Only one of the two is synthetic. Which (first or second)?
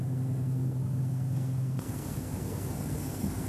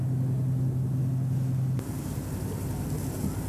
first